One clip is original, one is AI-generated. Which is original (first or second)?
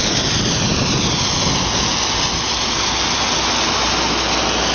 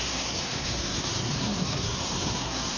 first